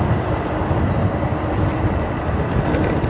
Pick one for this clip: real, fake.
real